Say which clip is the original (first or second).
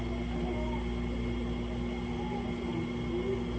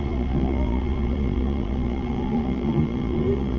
first